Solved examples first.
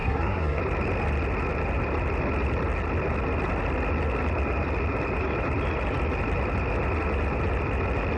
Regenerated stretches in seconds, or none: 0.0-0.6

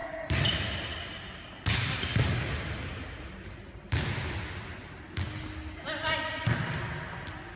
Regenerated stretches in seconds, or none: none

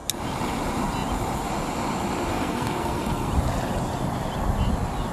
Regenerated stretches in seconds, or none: 2.3-3.3